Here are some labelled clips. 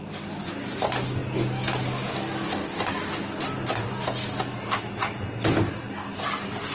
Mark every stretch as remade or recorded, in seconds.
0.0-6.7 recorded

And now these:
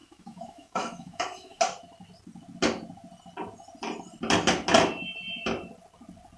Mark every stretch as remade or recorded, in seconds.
0.0-1.6 remade; 1.6-6.4 recorded

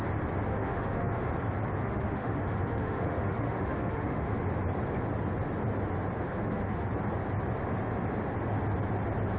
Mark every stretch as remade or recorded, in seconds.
0.0-0.5 recorded; 0.5-1.3 remade; 1.3-1.8 recorded; 1.8-4.3 remade; 4.3-6.3 recorded; 6.3-6.9 remade; 6.9-9.4 recorded